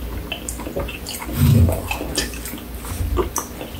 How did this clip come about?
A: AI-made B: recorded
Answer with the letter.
B